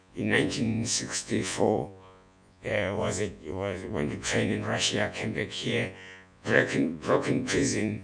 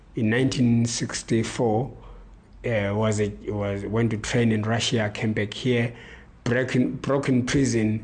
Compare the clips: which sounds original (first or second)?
second